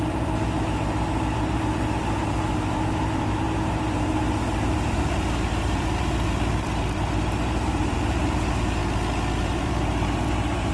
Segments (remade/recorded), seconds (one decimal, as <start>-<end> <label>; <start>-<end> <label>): 0.0-8.8 remade; 8.8-9.4 recorded; 9.4-10.7 remade